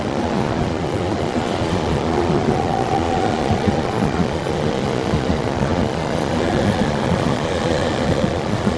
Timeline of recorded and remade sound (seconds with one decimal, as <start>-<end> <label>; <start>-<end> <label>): 0.0-8.8 remade